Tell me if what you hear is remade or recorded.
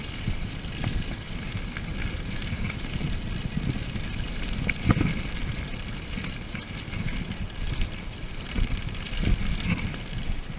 recorded